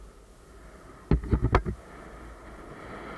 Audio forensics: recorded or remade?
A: recorded